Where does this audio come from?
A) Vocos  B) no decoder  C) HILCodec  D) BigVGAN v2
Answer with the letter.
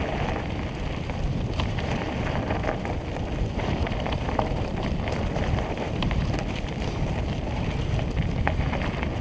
D